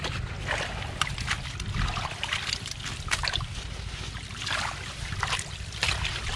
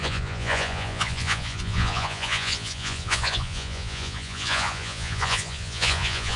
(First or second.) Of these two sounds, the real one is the first